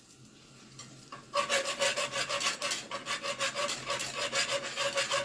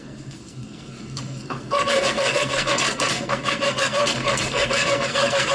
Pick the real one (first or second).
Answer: first